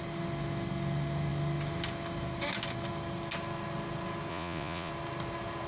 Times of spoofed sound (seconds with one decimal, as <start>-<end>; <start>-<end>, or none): 4.3-4.9